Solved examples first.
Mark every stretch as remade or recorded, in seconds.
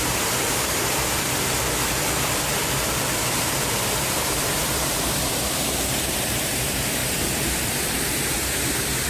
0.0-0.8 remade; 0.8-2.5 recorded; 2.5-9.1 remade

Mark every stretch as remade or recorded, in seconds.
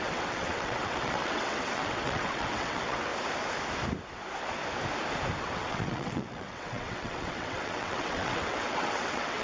0.0-3.1 remade; 3.1-5.4 recorded; 5.4-9.4 remade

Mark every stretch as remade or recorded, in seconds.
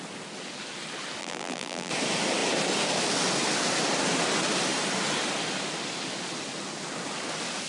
0.0-1.2 recorded; 1.2-1.9 remade; 1.9-7.7 recorded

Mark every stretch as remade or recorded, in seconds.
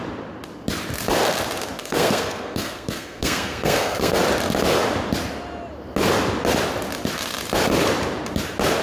0.0-1.8 recorded; 1.8-4.2 remade; 4.2-8.8 recorded